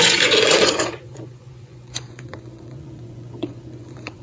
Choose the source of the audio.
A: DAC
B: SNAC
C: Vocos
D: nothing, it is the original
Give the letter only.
C